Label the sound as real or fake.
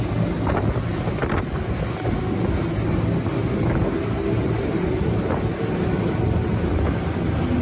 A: real